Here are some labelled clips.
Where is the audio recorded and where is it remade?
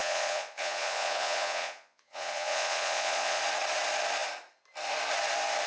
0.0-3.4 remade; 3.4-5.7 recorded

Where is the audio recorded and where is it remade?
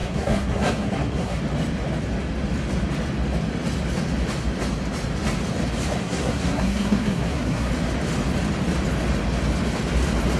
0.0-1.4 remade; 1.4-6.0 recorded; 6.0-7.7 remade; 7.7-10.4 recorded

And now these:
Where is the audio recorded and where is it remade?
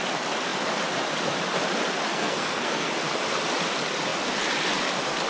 0.0-2.1 recorded; 2.1-2.9 remade; 2.9-5.3 recorded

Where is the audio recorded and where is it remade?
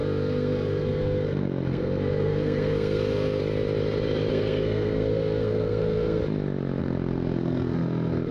0.0-3.4 remade; 3.4-4.3 recorded; 4.3-6.2 remade; 6.2-6.8 recorded; 6.8-8.3 remade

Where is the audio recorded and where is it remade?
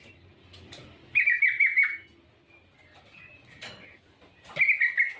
0.0-5.2 recorded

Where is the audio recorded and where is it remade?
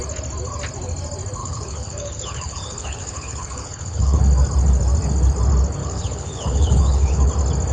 0.0-1.4 recorded; 1.4-4.2 remade; 4.2-5.8 recorded; 5.8-7.3 remade; 7.3-7.7 recorded